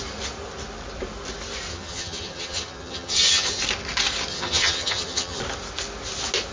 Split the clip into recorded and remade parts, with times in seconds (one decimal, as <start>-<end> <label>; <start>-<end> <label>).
0.0-1.7 recorded; 1.7-3.6 remade; 3.6-4.3 recorded; 4.3-5.4 remade; 5.4-6.5 recorded